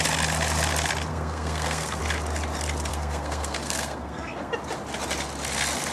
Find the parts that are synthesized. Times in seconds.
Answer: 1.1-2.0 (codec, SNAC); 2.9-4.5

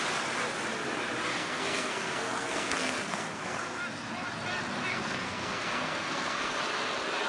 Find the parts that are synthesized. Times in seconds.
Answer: 1.3-3.8 (codec, SNAC); 4.9-6.6

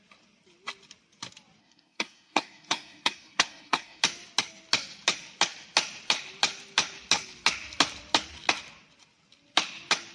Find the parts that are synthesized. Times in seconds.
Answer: 1.6-4.0 (codec, SNAC)

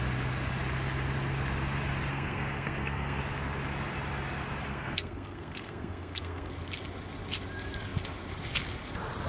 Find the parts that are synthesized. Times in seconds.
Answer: 2.1-3.2 (codec, SNAC); 4.7-6.5

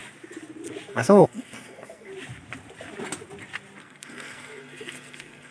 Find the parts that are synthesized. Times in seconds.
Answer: 0.9-2.1 (codec, SNAC); 3.8-5.5

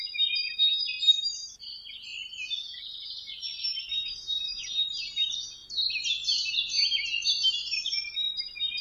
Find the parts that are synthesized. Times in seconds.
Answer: none

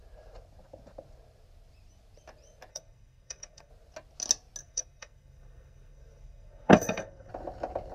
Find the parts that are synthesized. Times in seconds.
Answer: 2.7-3.7 (codec, SNAC); 4.6-7.3

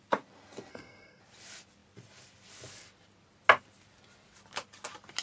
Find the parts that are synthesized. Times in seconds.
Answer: 0.7-1.2 (codec, SNAC)